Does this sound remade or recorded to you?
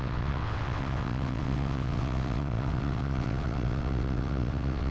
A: remade